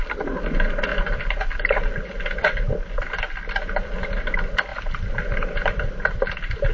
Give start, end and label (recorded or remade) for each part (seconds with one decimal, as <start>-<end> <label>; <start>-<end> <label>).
0.0-4.7 recorded; 4.7-5.7 remade; 5.7-6.7 recorded